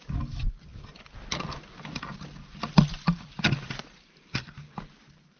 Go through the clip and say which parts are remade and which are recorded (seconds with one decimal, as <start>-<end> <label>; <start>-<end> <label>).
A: 0.0-5.4 recorded